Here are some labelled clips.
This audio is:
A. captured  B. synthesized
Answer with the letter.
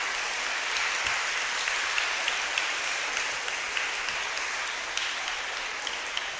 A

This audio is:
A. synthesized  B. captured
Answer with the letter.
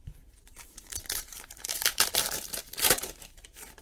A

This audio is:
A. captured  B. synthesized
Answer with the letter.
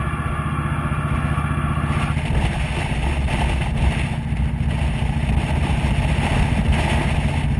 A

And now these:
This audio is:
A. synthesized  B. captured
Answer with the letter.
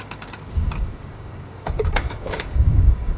A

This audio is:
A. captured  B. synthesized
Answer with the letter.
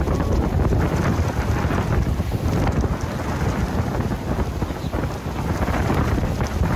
A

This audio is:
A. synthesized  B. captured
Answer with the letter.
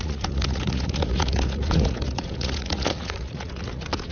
A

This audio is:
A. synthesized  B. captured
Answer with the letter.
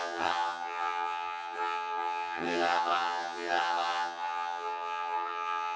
A